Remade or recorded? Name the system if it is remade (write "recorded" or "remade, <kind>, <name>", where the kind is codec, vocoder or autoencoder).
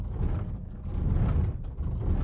recorded